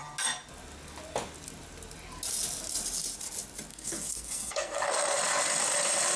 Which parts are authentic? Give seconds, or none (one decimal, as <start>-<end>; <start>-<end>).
0.0-3.7; 5.2-6.2